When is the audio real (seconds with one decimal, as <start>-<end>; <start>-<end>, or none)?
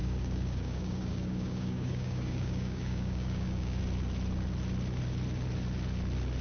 3.8-6.4